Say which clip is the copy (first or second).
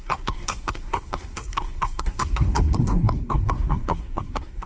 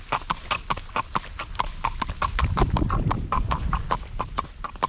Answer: first